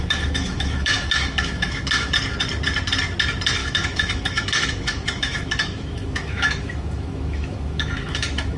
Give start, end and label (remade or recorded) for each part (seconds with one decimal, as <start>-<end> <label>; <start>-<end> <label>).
0.0-2.1 remade; 2.1-3.6 recorded; 3.6-8.6 remade